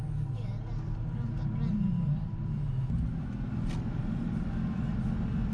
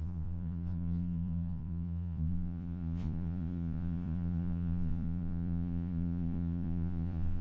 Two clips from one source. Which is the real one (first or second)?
first